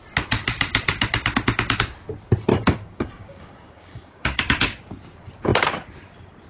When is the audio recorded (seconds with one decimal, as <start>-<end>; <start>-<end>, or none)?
0.0-2.5; 4.4-6.5